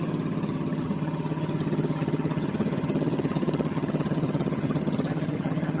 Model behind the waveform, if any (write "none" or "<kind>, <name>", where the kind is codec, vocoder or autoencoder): vocoder, HiFi-GAN